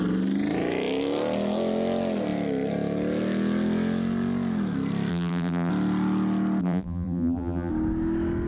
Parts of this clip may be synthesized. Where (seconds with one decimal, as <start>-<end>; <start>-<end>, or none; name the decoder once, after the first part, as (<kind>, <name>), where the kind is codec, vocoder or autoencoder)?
5.1-5.7 (vocoder, BigVGAN v2); 6.6-7.7